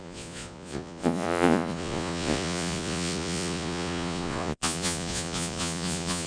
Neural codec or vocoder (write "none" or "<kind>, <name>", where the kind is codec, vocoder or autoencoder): vocoder, Vocos